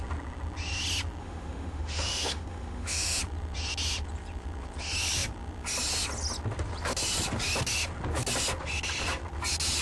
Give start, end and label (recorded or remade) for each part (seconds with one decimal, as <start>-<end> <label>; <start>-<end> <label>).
0.0-1.2 recorded; 1.2-3.2 remade; 3.2-9.8 recorded